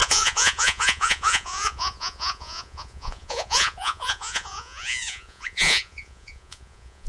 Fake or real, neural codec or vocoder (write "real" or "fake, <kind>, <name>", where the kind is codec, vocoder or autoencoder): fake, vocoder, Vocos